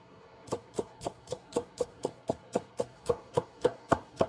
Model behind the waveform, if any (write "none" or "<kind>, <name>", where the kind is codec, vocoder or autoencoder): codec, SNAC